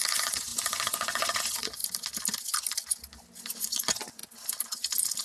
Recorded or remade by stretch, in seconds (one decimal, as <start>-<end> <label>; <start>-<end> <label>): 0.0-1.8 remade; 1.8-3.6 recorded; 3.6-4.2 remade; 4.2-5.2 recorded